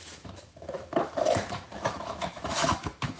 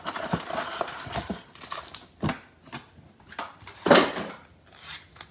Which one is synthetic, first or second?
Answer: first